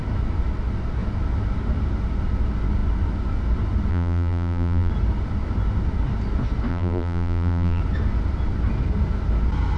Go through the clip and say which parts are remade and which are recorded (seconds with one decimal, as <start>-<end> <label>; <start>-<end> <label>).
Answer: 0.0-3.9 recorded; 3.9-4.9 remade; 4.9-6.7 recorded; 6.7-7.8 remade; 7.8-9.8 recorded